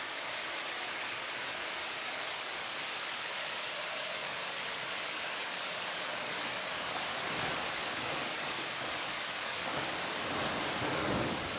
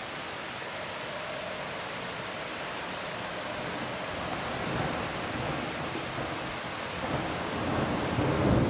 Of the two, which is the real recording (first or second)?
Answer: second